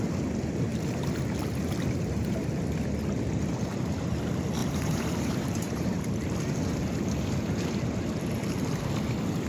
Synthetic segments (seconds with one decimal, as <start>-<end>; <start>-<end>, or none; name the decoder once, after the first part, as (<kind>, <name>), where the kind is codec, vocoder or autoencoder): 4.6-6.2 (vocoder, BigVGAN v2)